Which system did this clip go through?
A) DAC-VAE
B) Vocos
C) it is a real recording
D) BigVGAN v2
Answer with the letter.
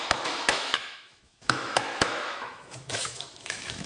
A